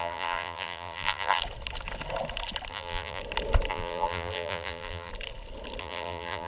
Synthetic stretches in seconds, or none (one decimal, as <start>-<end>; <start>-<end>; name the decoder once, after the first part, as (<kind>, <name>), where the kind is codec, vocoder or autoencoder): 0.0-1.4 (vocoder, BigVGAN v2); 2.7-3.2; 3.7-5.1; 5.8-6.5